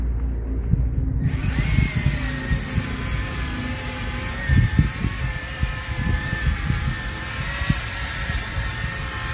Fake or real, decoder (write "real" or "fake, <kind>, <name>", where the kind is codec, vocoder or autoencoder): real